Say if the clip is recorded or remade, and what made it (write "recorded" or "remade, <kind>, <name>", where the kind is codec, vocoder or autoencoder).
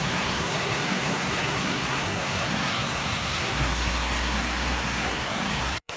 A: remade, codec, SNAC